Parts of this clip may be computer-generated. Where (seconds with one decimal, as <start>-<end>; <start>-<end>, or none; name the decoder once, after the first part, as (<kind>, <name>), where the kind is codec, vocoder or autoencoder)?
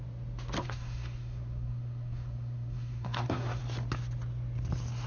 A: 0.6-3.6 (codec, SNAC)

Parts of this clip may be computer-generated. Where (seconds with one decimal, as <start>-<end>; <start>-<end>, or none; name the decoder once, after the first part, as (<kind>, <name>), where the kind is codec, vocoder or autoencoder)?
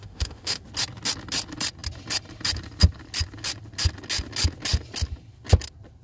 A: 0.0-0.6 (autoencoder, DAC-VAE)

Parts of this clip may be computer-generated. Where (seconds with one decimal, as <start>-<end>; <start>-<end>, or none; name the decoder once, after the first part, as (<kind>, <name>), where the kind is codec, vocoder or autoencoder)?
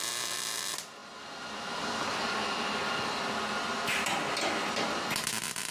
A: none